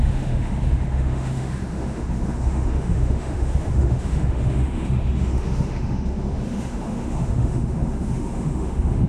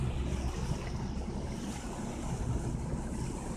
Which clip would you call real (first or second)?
second